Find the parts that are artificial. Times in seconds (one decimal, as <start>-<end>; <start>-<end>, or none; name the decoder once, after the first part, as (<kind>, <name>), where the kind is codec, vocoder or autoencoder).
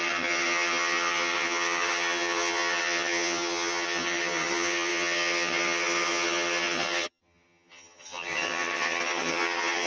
0.0-9.9 (vocoder, HiFi-GAN)